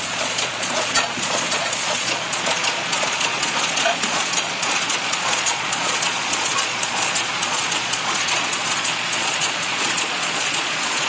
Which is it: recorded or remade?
remade